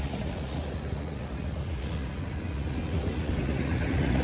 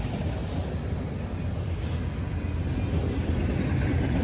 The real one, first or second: second